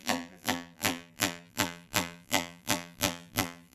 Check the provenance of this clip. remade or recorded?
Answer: remade